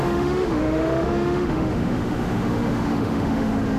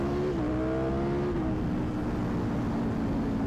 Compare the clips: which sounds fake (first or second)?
first